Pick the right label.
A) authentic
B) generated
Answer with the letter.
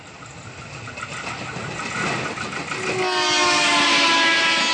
A